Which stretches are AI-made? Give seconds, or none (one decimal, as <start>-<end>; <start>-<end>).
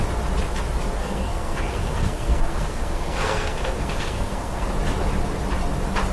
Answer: 1.0-4.7